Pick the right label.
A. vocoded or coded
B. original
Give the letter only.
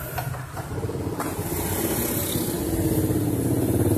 B